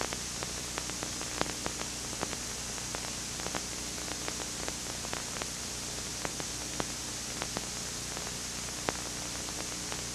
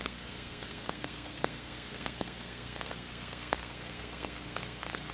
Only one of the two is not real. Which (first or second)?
second